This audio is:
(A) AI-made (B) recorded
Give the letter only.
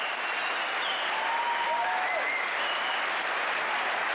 B